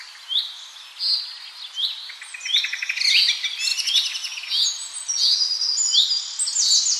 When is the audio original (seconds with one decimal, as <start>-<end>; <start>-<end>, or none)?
0.0-7.0